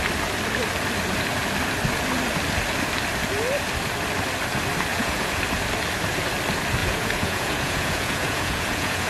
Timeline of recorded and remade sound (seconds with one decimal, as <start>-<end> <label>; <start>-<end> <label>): 0.0-4.9 recorded; 4.9-5.4 remade; 5.4-6.8 recorded; 6.8-9.1 remade